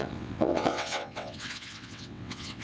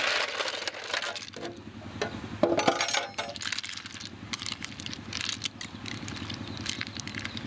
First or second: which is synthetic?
first